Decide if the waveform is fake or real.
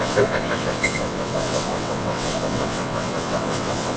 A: fake